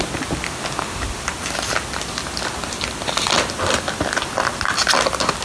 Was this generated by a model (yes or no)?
no